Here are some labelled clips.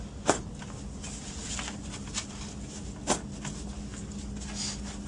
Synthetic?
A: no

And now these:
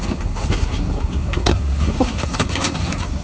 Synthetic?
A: yes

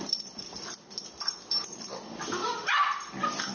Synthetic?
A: no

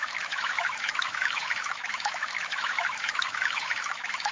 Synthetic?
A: yes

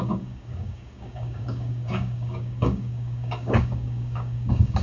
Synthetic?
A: yes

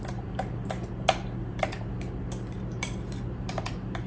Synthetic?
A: yes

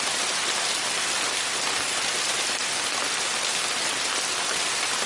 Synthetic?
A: no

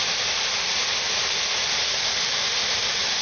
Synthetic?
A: no